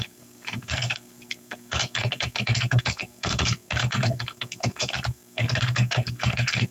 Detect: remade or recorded remade